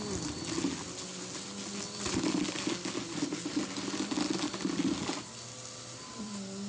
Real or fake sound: real